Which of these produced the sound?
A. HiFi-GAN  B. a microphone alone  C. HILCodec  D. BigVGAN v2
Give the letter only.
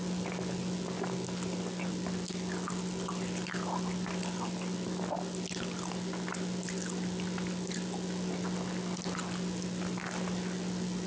B